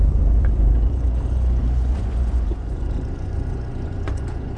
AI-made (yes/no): yes